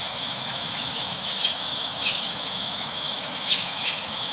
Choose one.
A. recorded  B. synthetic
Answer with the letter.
B